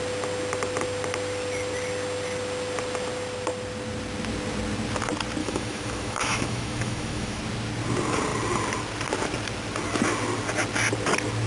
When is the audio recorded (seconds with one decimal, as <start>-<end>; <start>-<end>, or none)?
0.0-5.4; 7.4-11.5